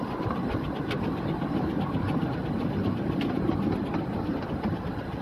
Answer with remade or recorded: recorded